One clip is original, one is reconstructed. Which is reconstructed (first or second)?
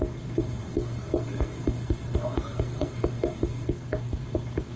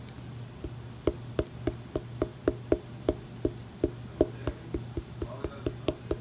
first